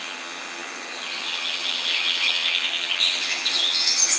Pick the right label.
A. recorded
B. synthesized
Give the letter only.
B